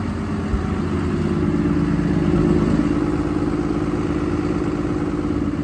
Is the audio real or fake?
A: real